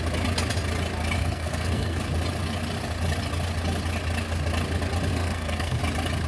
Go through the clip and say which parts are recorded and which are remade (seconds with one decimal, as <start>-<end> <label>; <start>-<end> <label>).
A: 0.0-1.2 recorded; 1.2-2.0 remade; 2.0-5.1 recorded; 5.1-5.8 remade; 5.8-6.3 recorded